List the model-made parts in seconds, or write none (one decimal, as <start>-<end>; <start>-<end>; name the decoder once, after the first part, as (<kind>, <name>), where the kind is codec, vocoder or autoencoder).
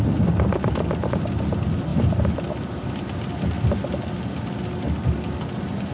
none